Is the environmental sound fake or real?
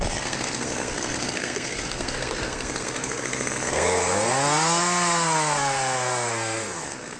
fake